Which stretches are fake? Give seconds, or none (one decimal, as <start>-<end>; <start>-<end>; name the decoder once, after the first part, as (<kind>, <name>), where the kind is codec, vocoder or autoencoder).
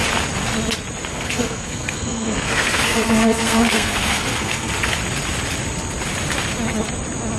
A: 1.1-4.7 (codec, SNAC)